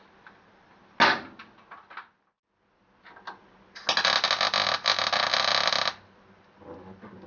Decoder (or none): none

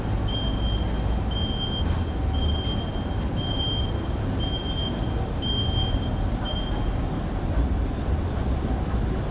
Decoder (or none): none